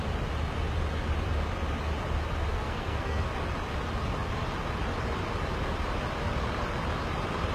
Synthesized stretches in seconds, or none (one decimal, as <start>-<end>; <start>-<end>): 2.5-3.3